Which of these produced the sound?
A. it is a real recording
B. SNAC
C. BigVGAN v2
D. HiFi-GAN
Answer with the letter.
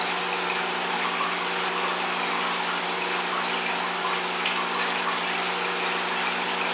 A